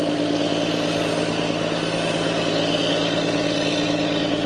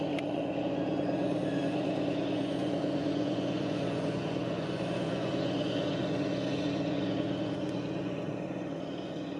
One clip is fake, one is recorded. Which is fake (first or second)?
second